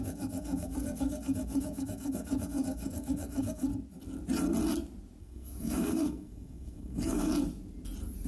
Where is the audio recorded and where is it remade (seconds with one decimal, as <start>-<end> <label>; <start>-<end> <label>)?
0.0-3.7 remade; 3.7-5.2 recorded; 5.2-7.3 remade; 7.3-8.3 recorded